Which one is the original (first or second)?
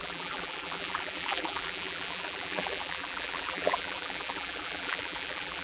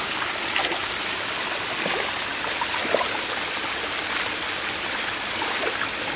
second